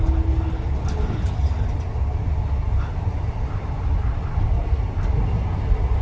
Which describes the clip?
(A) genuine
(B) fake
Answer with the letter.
A